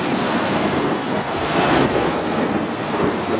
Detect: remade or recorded remade